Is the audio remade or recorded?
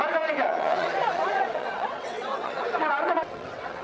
remade